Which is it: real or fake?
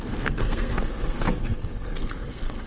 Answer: fake